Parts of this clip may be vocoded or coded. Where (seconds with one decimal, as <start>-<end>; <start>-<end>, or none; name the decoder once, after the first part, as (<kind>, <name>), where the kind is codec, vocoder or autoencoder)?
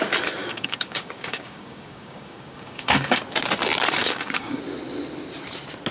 0.4-3.2 (codec, DAC); 4.0-4.6